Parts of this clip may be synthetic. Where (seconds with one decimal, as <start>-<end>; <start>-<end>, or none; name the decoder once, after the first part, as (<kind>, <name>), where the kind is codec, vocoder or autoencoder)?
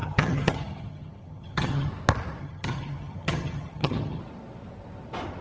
0.0-1.9 (vocoder, HiFi-GAN); 2.4-4.2